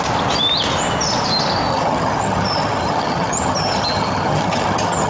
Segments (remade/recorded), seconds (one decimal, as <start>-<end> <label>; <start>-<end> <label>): 0.0-1.7 recorded; 1.7-5.1 remade